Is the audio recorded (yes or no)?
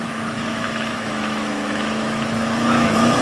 no